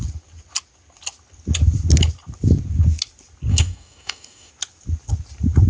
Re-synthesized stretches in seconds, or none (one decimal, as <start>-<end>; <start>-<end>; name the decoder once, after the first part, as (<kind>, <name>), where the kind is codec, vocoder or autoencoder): 3.5-4.5 (codec, DAC)